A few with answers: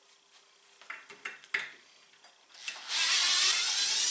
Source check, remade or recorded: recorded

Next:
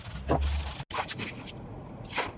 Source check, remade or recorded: recorded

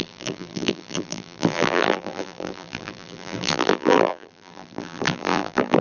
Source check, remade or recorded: remade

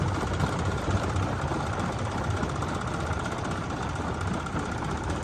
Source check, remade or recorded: remade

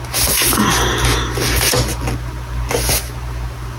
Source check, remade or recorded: recorded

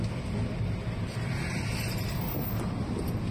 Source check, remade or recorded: recorded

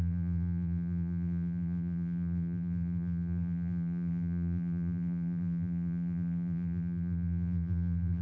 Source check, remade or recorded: remade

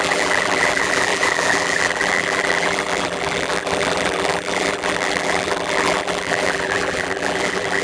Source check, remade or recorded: remade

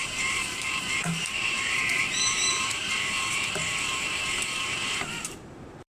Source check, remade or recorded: remade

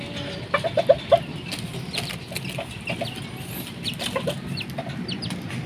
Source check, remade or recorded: recorded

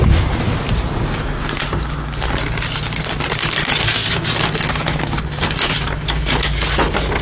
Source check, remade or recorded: recorded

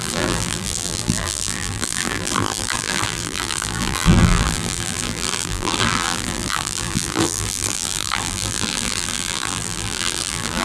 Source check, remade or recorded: remade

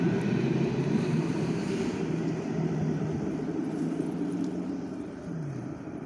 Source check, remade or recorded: remade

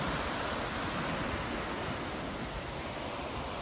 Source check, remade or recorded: recorded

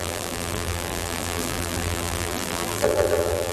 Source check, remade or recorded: remade